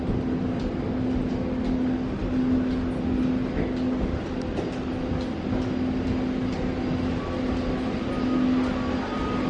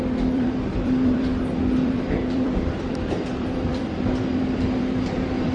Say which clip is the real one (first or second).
first